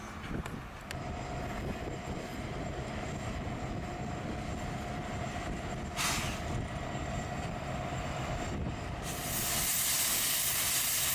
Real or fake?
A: real